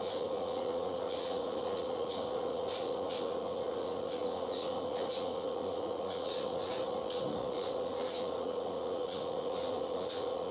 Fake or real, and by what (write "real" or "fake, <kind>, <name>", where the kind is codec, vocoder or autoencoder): fake, vocoder, Vocos